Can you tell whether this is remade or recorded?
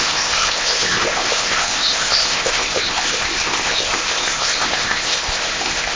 remade